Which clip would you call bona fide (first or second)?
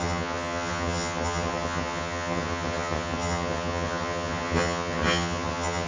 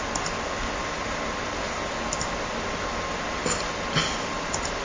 second